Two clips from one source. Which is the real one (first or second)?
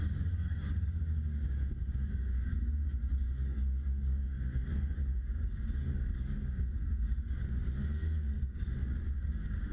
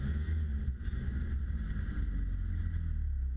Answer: second